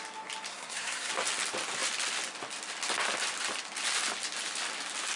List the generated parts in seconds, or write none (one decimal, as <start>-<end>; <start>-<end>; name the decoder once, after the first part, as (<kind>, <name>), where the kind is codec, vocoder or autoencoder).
0.5-1.1 (codec, SNAC)